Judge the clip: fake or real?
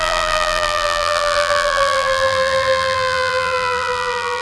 fake